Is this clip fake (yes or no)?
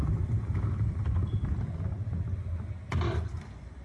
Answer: no